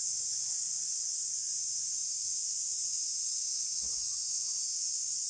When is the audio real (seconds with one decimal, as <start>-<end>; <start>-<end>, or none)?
0.0-0.7; 1.3-5.3